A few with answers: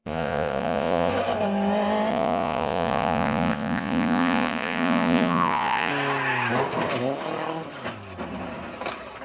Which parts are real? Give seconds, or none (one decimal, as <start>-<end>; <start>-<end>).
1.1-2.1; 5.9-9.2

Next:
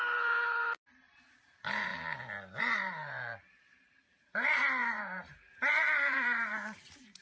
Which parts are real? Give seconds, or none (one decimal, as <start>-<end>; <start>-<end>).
1.9-2.6

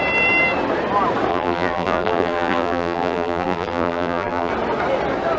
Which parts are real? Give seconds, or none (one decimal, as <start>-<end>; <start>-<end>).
0.0-1.3; 4.5-5.4

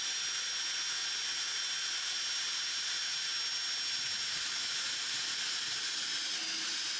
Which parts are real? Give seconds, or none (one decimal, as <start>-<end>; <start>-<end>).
0.0-7.0

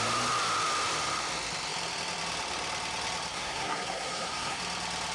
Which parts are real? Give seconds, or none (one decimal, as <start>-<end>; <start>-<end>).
0.0-3.3; 4.6-5.1